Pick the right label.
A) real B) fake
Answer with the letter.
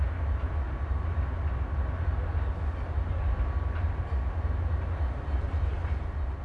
A